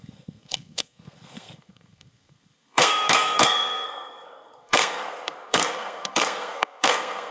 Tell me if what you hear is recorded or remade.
remade